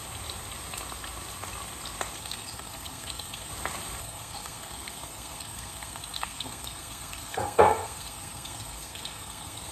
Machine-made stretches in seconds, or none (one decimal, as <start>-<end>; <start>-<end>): 2.2-3.5; 4.0-9.7